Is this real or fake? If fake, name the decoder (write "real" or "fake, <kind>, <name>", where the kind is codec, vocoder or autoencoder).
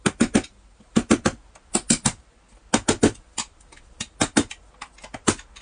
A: real